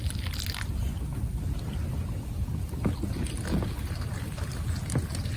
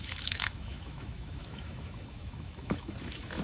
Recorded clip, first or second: first